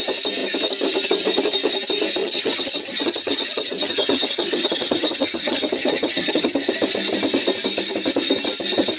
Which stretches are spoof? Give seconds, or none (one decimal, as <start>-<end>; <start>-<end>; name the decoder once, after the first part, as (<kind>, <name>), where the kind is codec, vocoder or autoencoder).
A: 2.2-6.7 (vocoder, HiFi-GAN)